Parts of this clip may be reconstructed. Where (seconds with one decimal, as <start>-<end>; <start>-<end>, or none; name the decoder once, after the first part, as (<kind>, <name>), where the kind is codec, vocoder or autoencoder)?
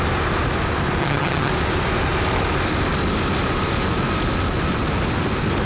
1.0-1.5 (vocoder, HiFi-GAN)